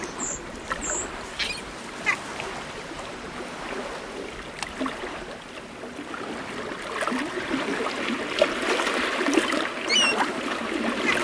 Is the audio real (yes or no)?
yes